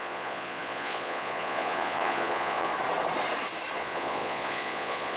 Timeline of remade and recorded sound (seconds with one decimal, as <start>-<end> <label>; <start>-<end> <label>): 0.0-2.7 remade; 2.7-3.8 recorded; 3.8-5.2 remade

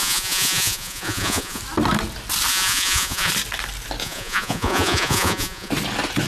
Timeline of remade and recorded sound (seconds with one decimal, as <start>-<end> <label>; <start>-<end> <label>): 0.0-1.6 remade; 1.6-2.5 recorded; 2.5-3.3 remade; 3.3-4.0 recorded; 4.0-5.7 remade; 5.7-6.3 recorded

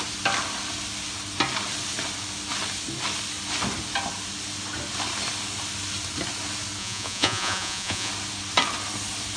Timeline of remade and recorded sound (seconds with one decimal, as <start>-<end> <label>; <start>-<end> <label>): 0.0-6.8 recorded; 6.8-8.1 remade; 8.1-9.4 recorded

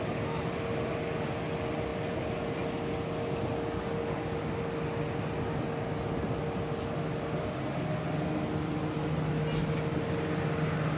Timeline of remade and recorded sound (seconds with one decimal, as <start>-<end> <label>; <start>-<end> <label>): 0.0-11.0 recorded

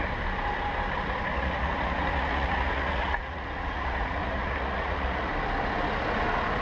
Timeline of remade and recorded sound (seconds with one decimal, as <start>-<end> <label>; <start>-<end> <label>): 0.0-1.3 recorded; 1.3-5.3 remade; 5.3-6.6 recorded

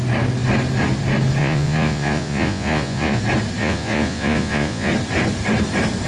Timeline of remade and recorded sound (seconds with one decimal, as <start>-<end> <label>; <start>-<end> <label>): 0.0-1.4 recorded; 1.4-3.2 remade; 3.2-3.6 recorded; 3.6-4.9 remade; 4.9-6.1 recorded